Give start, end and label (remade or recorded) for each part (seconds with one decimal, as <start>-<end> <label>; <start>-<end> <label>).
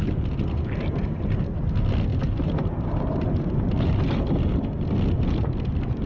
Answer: 0.0-2.1 recorded; 2.1-4.2 remade; 4.2-6.1 recorded